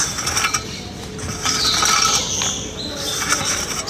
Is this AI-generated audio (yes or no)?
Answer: no